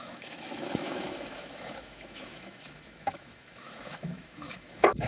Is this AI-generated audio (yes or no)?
yes